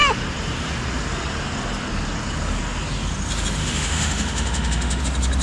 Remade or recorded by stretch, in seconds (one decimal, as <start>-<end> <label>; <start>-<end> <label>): 0.0-3.6 recorded; 3.6-5.0 remade; 5.0-5.4 recorded